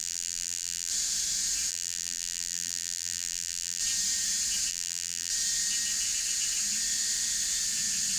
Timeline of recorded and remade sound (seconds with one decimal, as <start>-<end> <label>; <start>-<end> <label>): 0.0-0.9 remade; 0.9-1.7 recorded; 1.7-3.8 remade; 3.8-4.7 recorded; 4.7-5.3 remade; 5.3-8.2 recorded